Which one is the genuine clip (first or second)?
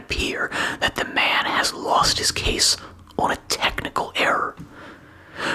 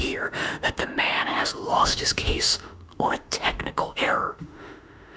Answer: first